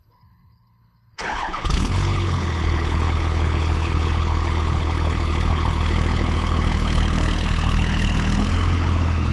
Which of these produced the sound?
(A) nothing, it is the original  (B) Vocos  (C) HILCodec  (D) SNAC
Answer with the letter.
C